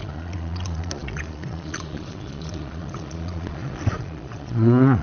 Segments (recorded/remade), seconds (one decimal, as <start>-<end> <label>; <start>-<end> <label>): 0.0-5.0 remade